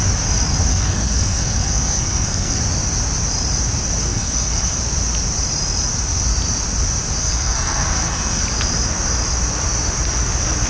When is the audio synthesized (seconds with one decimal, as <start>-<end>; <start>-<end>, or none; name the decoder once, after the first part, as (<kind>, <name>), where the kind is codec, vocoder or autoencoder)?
0.7-2.6 (codec, SNAC); 4.0-4.8; 7.2-8.4